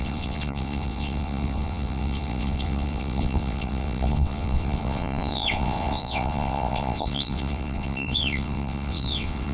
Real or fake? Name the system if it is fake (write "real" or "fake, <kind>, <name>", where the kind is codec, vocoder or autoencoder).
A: fake, vocoder, WaveNeXt